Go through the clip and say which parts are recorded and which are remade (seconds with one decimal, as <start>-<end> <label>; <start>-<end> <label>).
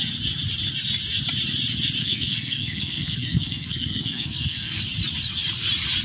0.0-2.0 recorded; 2.0-4.8 remade; 4.8-6.0 recorded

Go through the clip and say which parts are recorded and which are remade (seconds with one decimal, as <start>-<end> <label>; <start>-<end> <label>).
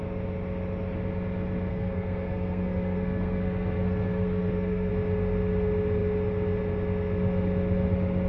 0.0-1.7 recorded; 1.7-4.9 remade; 4.9-8.3 recorded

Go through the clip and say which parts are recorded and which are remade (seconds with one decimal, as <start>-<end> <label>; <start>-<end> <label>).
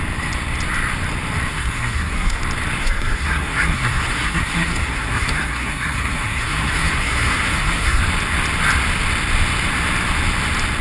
0.0-1.5 recorded; 1.5-2.4 remade; 2.4-2.8 recorded; 2.8-8.0 remade; 8.0-10.8 recorded